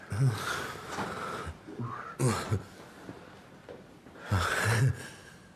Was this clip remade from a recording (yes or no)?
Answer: no